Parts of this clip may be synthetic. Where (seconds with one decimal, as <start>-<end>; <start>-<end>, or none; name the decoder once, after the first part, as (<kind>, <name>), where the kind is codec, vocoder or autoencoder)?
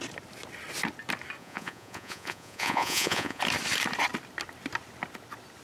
1.4-3.4 (vocoder, Vocos)